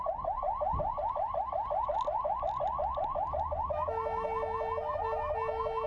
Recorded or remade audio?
recorded